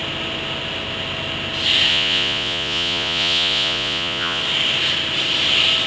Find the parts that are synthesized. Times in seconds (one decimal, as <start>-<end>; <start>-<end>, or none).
1.9-4.4